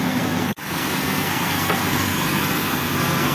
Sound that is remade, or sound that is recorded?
remade